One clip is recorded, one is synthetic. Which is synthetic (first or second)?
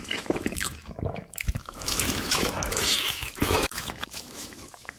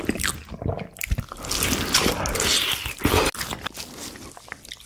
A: first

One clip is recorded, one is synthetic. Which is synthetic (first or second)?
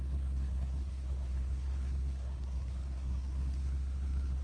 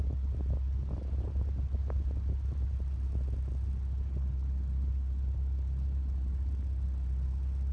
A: first